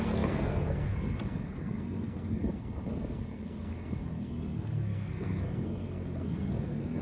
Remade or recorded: remade